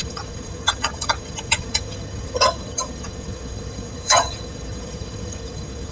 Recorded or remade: remade